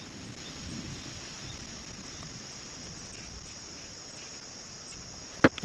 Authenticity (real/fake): real